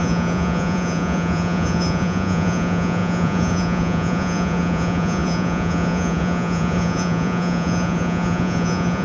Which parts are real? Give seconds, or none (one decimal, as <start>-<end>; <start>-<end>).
none